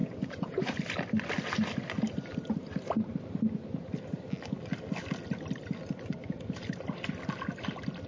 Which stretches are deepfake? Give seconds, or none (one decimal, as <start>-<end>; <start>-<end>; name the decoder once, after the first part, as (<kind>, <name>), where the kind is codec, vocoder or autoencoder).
0.0-0.7 (vocoder, Vocos)

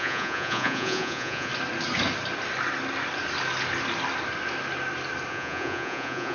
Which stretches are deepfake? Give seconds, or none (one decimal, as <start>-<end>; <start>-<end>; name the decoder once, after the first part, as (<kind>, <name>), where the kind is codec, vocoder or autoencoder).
0.0-1.5 (vocoder, Vocos); 5.3-6.3

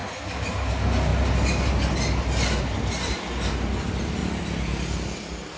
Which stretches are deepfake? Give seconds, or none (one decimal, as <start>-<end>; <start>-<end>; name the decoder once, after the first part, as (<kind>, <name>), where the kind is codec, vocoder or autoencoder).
none